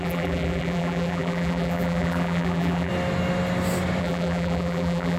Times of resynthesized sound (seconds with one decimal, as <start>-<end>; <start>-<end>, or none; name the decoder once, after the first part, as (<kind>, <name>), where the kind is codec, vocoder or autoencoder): 0.0-2.9 (vocoder, BigVGAN v2); 4.0-5.2